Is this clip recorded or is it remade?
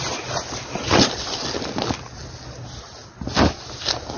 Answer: recorded